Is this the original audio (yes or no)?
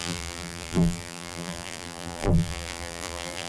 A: no